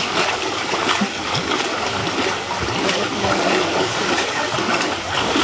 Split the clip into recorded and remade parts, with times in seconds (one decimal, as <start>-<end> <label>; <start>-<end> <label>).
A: 0.0-2.0 remade; 2.0-2.8 recorded; 2.8-5.4 remade